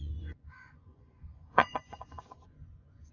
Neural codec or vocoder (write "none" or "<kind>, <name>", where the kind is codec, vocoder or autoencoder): vocoder, Vocos